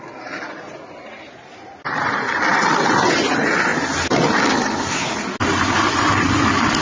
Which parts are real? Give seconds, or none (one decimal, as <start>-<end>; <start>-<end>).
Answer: 0.0-6.8